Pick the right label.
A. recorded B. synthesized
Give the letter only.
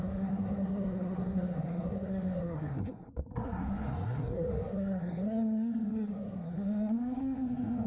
B